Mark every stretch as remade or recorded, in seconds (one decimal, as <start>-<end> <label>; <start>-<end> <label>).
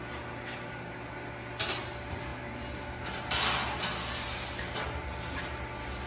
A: 0.0-6.1 recorded